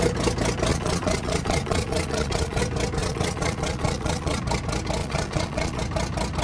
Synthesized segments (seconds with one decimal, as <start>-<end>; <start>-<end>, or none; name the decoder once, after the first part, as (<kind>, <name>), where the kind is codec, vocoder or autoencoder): 0.7-2.6 (vocoder, Vocos); 3.0-4.4; 5.0-5.8